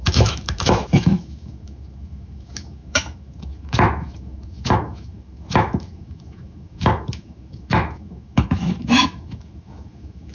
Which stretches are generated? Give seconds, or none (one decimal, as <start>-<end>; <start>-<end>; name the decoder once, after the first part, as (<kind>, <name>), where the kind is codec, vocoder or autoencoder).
0.0-10.3 (autoencoder, DAC-VAE)